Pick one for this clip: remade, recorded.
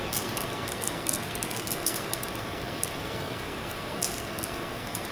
remade